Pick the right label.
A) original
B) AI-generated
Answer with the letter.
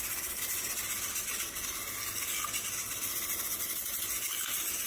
A